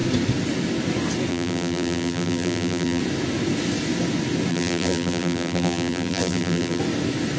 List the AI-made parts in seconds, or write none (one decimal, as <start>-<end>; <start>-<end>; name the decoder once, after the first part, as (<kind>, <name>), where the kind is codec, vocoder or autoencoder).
1.3-3.0 (vocoder, BigVGAN v2); 4.5-6.8